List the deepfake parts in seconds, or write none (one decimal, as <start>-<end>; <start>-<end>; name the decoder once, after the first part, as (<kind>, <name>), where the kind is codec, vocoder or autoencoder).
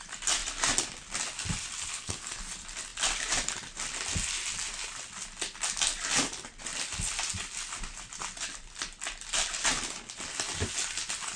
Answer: 1.9-2.4 (codec, SNAC)